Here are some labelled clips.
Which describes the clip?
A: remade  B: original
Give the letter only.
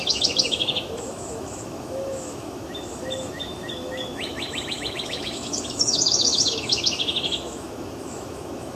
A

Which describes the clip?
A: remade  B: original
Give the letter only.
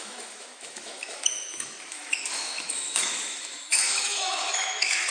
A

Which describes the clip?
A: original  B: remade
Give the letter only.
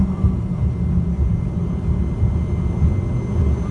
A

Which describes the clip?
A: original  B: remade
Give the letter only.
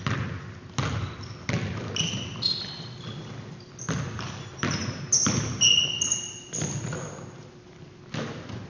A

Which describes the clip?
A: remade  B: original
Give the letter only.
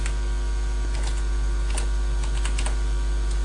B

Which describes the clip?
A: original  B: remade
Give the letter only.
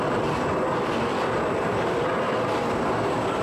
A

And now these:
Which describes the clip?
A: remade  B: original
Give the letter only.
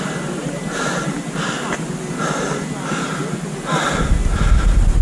B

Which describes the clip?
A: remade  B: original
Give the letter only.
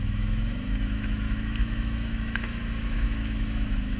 A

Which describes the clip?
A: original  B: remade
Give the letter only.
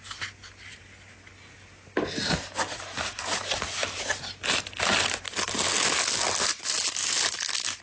A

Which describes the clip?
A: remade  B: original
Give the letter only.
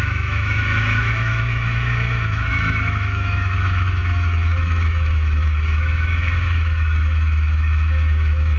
A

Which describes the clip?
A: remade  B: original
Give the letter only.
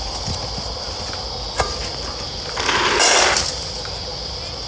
B